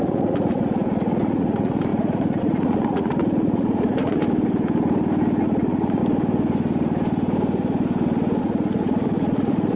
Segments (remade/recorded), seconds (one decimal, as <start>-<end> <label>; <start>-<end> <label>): 0.0-4.2 remade; 4.2-5.4 recorded; 5.4-6.0 remade; 6.0-8.4 recorded; 8.4-9.8 remade